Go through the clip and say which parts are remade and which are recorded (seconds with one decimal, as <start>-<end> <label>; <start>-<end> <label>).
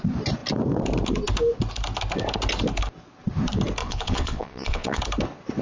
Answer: 0.0-3.8 recorded; 3.8-5.0 remade; 5.0-5.6 recorded